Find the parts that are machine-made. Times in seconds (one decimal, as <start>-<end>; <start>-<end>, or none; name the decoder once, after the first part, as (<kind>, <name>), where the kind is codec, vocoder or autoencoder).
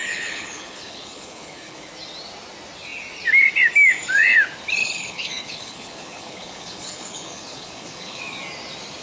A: 0.0-1.9 (codec, HILCodec); 4.8-8.2